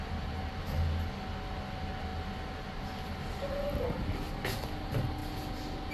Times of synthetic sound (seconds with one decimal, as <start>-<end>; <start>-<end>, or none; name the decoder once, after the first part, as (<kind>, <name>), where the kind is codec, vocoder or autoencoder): none